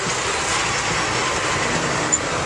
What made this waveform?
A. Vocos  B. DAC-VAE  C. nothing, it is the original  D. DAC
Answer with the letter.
C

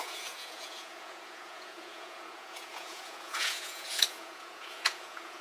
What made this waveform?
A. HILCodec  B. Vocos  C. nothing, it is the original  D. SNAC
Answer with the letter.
B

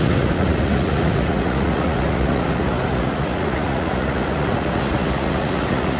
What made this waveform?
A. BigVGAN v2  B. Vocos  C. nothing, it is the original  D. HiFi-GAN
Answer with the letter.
B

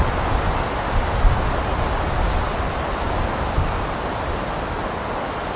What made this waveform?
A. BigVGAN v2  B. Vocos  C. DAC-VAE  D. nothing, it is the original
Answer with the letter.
D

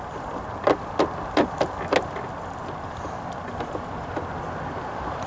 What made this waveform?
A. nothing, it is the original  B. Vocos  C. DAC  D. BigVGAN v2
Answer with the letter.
A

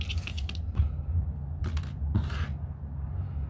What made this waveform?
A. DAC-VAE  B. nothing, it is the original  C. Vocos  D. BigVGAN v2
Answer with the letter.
B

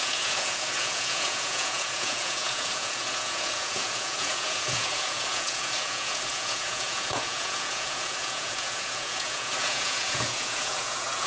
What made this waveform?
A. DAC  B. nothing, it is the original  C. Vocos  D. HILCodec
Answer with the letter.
C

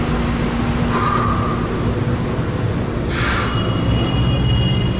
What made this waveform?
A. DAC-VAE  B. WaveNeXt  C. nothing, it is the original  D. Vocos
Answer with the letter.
C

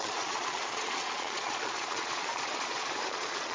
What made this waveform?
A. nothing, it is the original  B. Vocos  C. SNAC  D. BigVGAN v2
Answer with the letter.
B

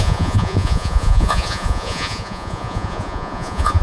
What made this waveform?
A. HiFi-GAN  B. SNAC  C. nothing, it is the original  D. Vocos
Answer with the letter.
D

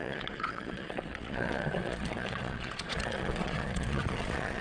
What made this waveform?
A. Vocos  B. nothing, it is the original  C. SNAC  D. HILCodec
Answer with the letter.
A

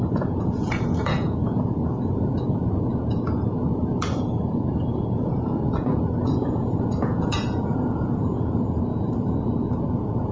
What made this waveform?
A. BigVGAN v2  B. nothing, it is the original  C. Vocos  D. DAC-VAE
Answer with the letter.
C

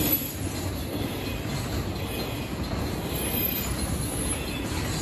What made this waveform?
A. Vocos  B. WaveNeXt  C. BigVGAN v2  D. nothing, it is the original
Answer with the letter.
D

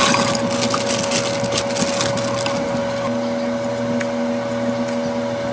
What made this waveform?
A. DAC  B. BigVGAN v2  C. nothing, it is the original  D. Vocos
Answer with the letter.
C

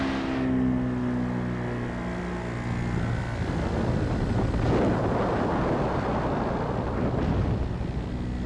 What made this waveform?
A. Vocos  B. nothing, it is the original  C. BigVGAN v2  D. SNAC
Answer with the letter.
B